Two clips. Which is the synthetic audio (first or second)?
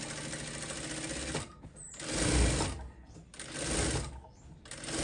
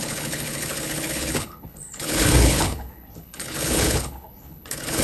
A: second